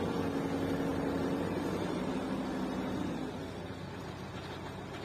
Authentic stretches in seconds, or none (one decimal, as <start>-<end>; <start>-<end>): 0.0-0.9; 2.4-5.0